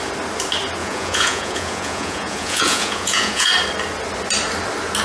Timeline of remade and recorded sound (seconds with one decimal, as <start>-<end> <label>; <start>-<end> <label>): 0.0-0.8 recorded; 0.8-3.5 remade; 3.5-5.0 recorded